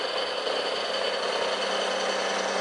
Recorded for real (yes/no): yes